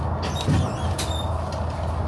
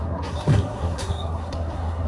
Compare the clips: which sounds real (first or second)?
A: first